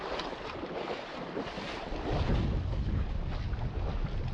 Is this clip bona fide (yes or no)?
yes